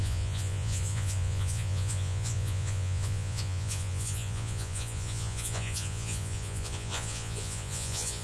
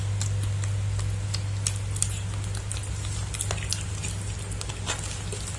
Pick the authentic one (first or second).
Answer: second